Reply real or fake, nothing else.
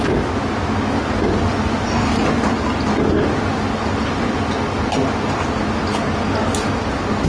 real